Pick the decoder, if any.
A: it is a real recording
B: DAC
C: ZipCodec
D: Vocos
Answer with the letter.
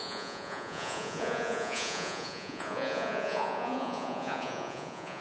D